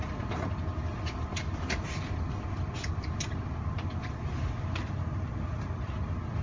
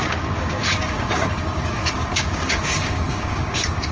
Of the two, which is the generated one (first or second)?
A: second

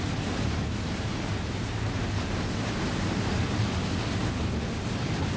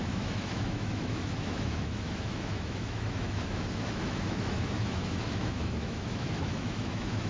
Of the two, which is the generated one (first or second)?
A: second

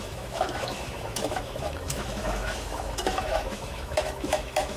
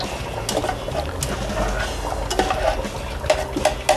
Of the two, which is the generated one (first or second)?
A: first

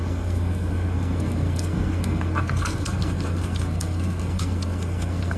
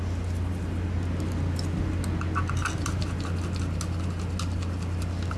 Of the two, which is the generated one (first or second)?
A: first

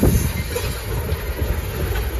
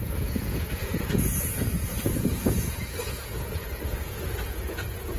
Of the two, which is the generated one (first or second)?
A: second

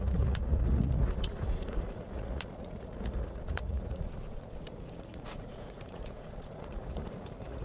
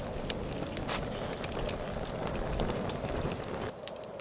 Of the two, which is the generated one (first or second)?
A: first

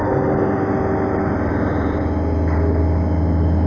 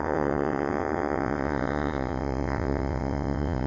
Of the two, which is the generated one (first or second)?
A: second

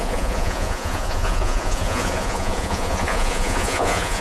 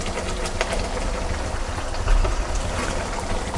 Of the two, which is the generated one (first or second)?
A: first